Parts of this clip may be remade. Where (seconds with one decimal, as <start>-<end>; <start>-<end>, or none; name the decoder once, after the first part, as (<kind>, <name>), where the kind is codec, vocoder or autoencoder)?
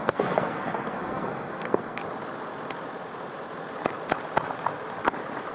0.0-2.0 (codec, SNAC)